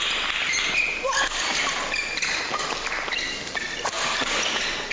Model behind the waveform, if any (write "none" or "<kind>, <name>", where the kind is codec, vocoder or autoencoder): none